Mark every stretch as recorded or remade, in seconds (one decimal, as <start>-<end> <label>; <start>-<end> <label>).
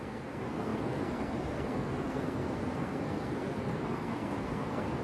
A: 0.0-5.0 remade